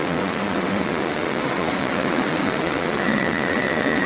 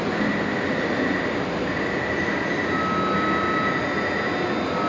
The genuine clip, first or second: second